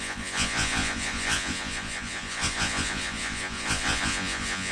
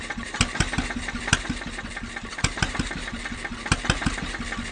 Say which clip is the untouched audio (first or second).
second